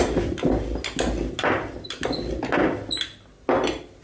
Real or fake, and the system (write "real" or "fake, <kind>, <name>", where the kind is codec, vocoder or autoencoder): real